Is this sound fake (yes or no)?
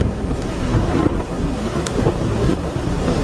yes